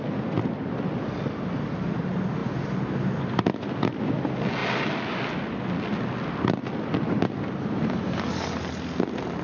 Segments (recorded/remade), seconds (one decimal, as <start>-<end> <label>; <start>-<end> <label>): 0.0-9.4 recorded

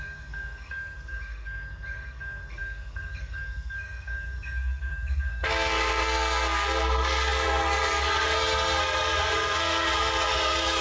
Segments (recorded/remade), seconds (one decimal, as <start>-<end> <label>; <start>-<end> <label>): 0.0-10.8 remade